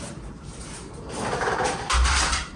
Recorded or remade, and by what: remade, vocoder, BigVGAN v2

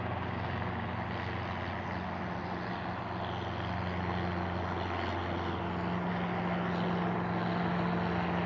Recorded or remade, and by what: recorded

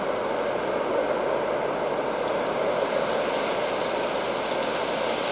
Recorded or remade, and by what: recorded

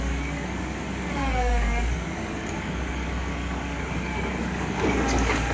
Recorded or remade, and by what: remade, codec, DAC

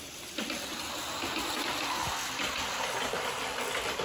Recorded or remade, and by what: recorded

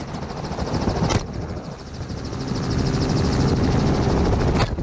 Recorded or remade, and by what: recorded